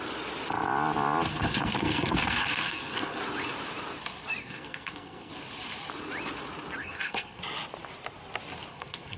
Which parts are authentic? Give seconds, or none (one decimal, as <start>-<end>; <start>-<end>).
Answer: 0.0-1.3; 3.2-4.4; 5.3-6.8; 7.4-8.7